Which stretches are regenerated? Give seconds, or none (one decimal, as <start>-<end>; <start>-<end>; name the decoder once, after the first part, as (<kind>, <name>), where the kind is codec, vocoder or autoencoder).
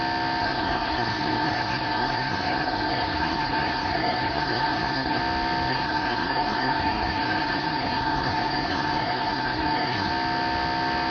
0.4-5.2 (codec, SNAC); 5.7-10.1